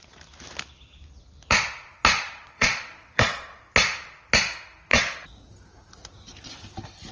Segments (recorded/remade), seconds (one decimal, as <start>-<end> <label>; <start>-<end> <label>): 0.0-2.1 recorded; 2.1-3.6 remade; 3.6-4.9 recorded; 4.9-5.5 remade; 5.5-7.1 recorded